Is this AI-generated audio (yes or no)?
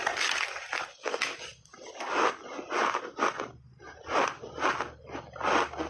no